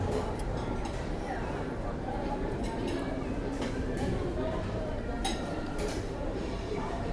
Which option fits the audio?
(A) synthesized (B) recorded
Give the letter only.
A